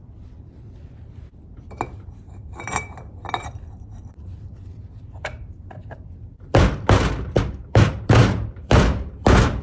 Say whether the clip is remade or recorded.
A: remade